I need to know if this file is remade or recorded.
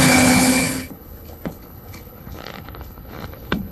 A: remade